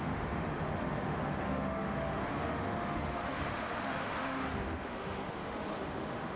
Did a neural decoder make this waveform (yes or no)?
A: yes